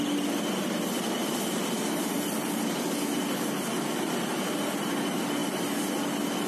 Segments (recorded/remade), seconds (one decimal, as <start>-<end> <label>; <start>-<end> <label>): 0.0-6.5 recorded